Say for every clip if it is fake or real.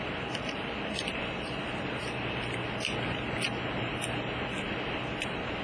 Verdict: real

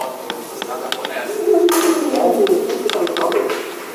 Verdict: real